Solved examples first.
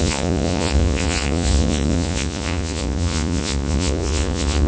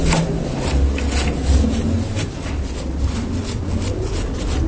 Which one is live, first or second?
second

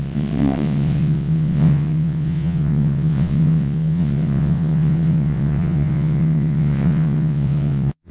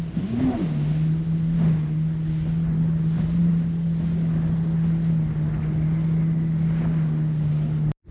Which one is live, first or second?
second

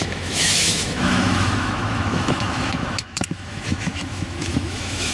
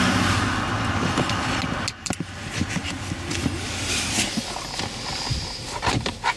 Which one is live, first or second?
second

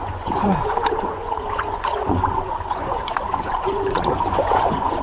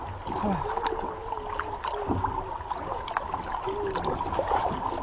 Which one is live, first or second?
second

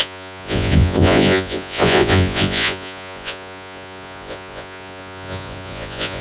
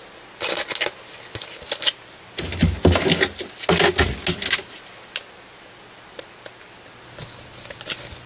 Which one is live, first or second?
second